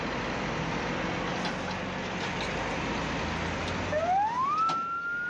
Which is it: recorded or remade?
recorded